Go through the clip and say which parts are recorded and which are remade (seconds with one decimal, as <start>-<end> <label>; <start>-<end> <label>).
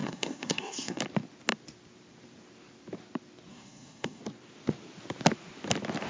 0.0-1.0 remade; 1.0-3.5 recorded; 3.5-4.2 remade; 4.2-6.1 recorded